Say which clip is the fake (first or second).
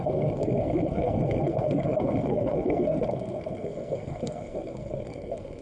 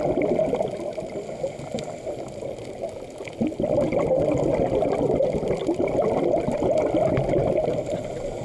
first